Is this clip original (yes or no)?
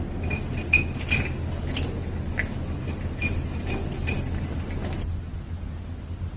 yes